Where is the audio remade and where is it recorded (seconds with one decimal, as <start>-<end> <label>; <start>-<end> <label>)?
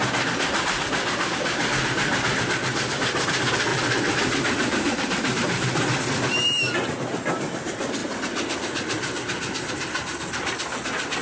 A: 0.0-3.7 recorded; 3.7-6.0 remade; 6.0-11.2 recorded